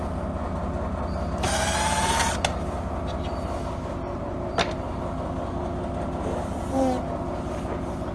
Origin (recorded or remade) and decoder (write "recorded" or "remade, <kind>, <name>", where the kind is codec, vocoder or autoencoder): recorded